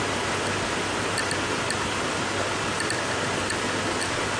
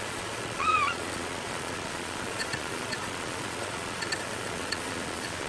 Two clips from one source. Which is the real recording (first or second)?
first